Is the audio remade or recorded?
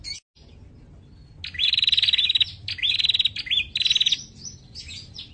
recorded